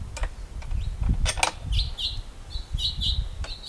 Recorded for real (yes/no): yes